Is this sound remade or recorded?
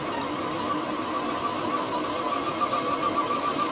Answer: recorded